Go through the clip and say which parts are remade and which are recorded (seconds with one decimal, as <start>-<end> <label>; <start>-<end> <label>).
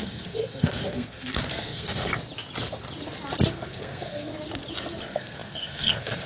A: 0.0-2.1 remade; 2.1-3.5 recorded; 3.5-4.3 remade; 4.3-5.0 recorded; 5.0-6.3 remade